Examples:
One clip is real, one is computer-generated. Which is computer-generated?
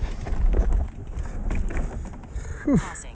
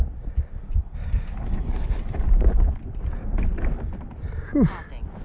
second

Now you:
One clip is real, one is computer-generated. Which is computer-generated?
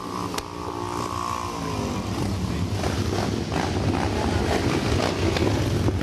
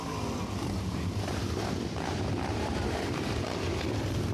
second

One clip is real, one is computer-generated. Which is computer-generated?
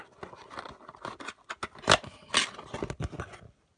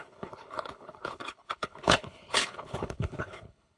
second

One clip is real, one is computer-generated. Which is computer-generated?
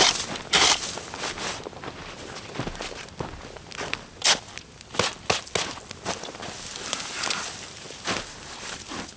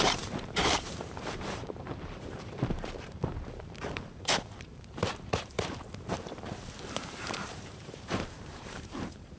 second